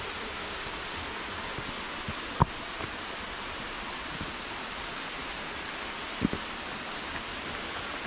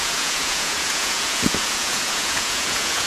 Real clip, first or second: first